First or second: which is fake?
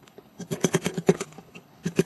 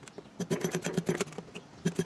first